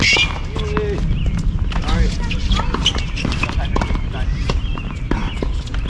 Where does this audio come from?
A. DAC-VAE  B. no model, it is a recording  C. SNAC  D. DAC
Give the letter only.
B